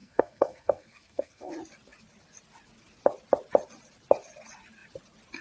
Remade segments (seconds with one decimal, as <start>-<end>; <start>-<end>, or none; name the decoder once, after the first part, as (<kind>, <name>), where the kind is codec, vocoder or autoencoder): 0.0-1.5 (codec, SNAC)